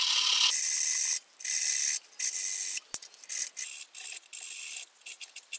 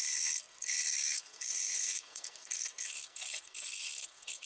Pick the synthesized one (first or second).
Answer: second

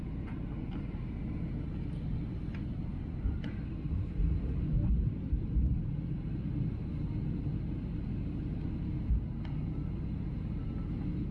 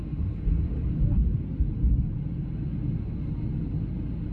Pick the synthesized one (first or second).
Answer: first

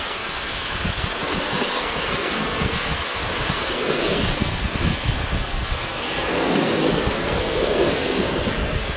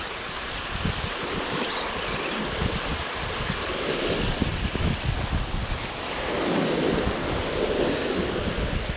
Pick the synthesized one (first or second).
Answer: first